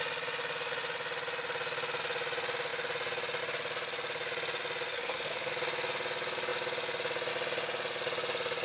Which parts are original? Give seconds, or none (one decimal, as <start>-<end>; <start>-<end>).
0.0-4.9; 5.5-8.6